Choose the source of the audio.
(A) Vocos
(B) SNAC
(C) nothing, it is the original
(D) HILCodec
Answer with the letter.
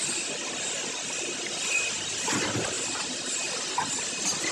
C